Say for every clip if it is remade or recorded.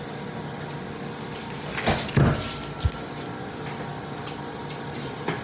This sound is recorded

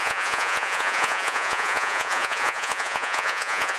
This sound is remade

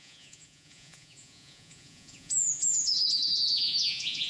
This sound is remade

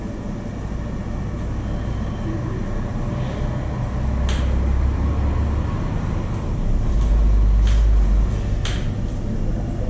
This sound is recorded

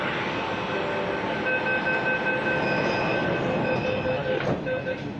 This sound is recorded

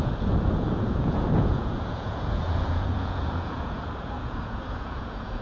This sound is remade